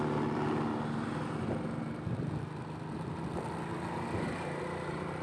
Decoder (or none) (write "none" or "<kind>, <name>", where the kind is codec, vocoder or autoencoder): none